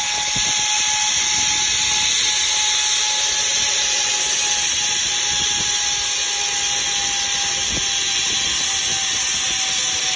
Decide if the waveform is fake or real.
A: real